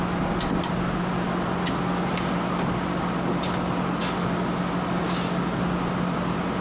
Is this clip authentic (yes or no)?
yes